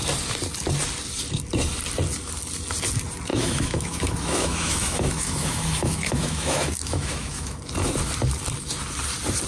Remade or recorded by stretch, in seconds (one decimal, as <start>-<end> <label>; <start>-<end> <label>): 0.0-3.3 recorded; 3.3-7.6 remade; 7.6-9.5 recorded